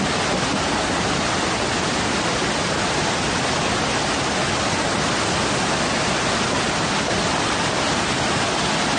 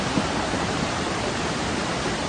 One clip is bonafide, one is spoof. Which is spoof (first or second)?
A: second